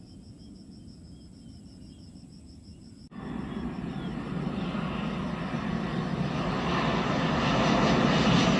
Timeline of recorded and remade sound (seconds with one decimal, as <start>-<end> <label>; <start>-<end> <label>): 0.0-8.6 recorded